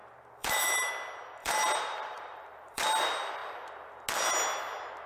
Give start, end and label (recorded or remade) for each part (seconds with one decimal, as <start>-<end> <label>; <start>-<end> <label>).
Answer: 0.0-0.9 remade; 0.9-1.4 recorded; 1.4-2.9 remade; 2.9-5.1 recorded